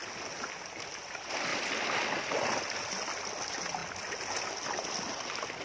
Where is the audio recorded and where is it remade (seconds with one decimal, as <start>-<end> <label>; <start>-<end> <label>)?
0.0-5.6 recorded